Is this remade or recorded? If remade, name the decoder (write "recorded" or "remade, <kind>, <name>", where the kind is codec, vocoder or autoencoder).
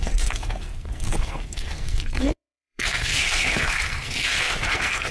remade, codec, SNAC